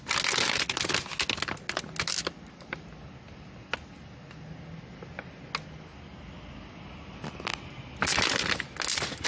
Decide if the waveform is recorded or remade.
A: recorded